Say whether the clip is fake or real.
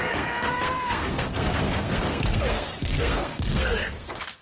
fake